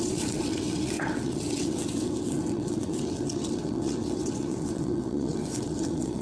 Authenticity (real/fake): fake